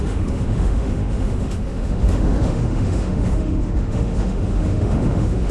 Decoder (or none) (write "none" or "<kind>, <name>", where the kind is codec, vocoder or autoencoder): autoencoder, DAC-VAE